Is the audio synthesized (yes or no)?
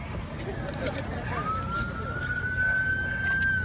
no